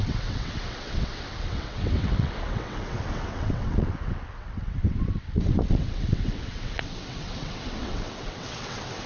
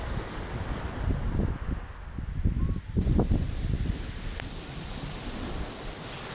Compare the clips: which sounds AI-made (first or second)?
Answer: first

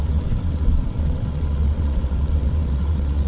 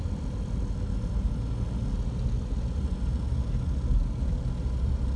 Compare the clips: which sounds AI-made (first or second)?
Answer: first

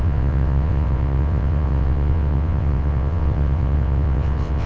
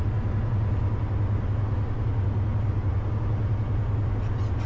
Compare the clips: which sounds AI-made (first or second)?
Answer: first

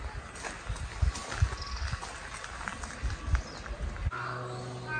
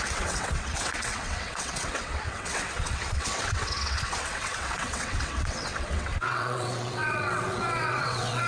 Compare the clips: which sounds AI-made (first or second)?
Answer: second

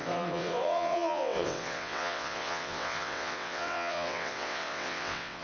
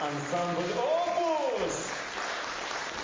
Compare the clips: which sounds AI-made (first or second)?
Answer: first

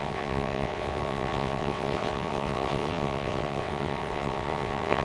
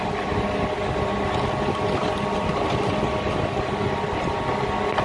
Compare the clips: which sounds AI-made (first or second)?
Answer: first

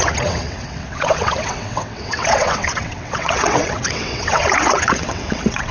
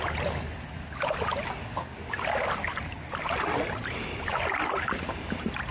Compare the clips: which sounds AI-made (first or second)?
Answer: first